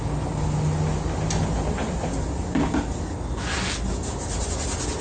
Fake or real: real